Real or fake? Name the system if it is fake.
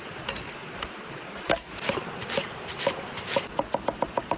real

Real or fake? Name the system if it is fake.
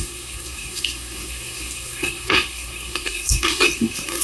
fake, codec, SNAC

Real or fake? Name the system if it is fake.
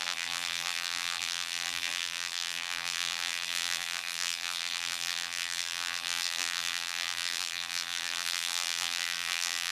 fake, vocoder, BigVGAN v2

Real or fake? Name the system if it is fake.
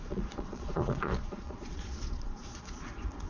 fake, vocoder, Vocos